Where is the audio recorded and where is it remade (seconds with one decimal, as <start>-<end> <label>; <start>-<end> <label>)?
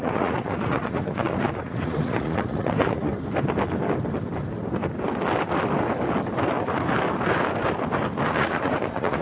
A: 0.0-3.1 remade; 3.1-8.3 recorded; 8.3-9.2 remade